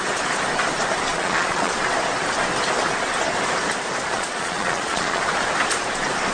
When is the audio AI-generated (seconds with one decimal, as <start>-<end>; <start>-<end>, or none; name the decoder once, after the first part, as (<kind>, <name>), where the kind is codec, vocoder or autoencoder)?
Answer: 1.1-1.7 (vocoder, Vocos); 4.1-5.2